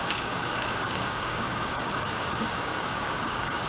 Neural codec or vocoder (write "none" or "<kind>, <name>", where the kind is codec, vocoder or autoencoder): codec, DAC